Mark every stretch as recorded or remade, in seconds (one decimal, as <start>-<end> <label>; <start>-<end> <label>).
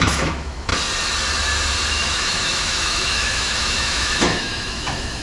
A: 0.0-0.7 remade; 0.7-1.9 recorded; 1.9-5.2 remade